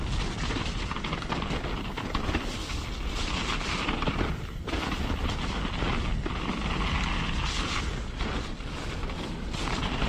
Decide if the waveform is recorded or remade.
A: recorded